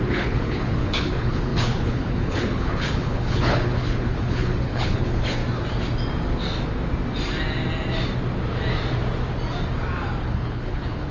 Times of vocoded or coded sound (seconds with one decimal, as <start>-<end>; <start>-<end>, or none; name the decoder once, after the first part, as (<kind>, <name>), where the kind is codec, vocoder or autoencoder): 0.0-5.4 (codec, HILCodec); 10.2-11.1